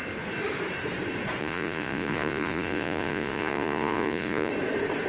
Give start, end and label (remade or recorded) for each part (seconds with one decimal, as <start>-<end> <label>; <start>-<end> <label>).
0.0-1.4 recorded; 1.4-4.5 remade; 4.5-5.1 recorded